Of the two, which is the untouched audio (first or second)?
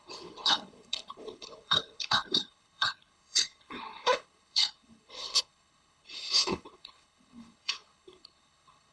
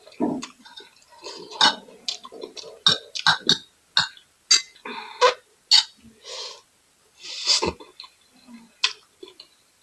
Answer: second